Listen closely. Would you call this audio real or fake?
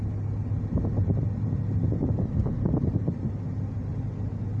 real